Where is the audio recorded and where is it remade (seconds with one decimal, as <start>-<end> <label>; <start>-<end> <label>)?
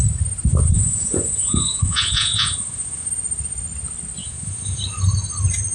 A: 0.0-0.5 recorded; 0.5-3.1 remade; 3.1-4.2 recorded; 4.2-4.8 remade; 4.8-5.7 recorded